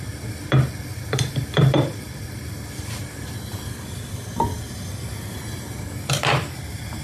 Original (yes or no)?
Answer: no